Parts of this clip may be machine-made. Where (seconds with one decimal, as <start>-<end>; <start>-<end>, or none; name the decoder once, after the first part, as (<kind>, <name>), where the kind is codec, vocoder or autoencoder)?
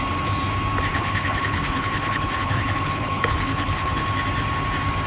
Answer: 0.9-4.0 (codec, HILCodec)